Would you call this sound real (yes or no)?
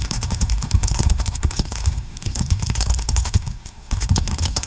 no